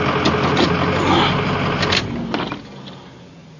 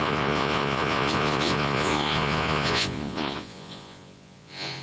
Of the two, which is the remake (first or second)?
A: second